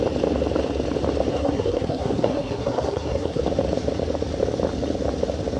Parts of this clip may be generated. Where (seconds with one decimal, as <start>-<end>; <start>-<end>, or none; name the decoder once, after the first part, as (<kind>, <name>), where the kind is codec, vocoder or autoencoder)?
1.3-3.4 (codec, SNAC)